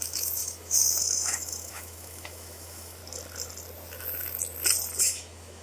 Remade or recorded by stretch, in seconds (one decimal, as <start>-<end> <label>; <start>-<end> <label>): 0.0-3.0 remade; 3.0-5.0 recorded; 5.0-5.6 remade